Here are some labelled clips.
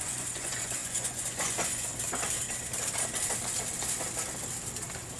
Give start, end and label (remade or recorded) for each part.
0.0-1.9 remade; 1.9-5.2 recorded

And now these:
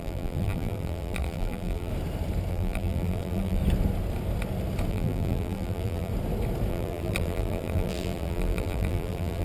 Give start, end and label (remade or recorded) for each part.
0.0-1.9 remade; 1.9-2.5 recorded; 2.5-3.6 remade; 3.6-4.9 recorded; 4.9-6.1 remade; 6.1-6.7 recorded; 6.7-9.4 remade